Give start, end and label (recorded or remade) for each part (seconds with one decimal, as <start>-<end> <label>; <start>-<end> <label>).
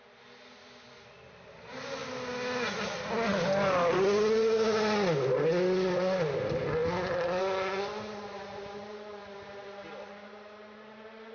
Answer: 0.0-11.3 recorded